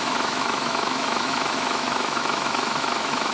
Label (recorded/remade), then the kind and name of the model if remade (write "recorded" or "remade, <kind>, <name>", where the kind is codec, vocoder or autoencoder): remade, autoencoder, DAC-VAE